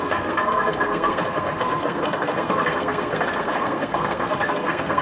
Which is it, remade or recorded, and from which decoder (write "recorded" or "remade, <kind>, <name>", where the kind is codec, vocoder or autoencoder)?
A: remade, codec, SNAC